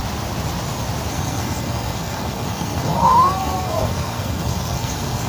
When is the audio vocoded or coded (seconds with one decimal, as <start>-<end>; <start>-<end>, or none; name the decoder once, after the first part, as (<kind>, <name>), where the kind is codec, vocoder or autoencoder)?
1.1-5.3 (codec, SNAC)